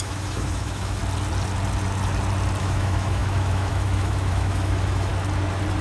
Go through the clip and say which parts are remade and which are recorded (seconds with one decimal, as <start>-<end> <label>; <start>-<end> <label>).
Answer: 0.0-1.0 remade; 1.0-2.6 recorded; 2.6-5.1 remade; 5.1-5.8 recorded